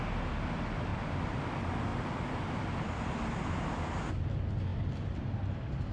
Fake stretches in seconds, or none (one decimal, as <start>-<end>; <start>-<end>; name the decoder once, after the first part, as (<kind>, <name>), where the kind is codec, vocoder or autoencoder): none